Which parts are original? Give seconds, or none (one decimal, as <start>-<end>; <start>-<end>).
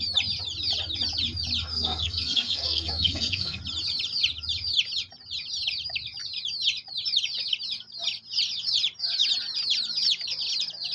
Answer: 0.0-1.7; 3.6-10.9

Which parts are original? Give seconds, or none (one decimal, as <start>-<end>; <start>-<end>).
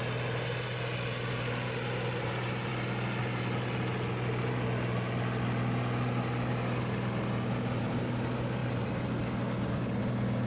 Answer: 0.0-10.5